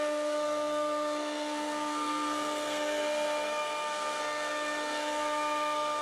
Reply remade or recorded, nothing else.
remade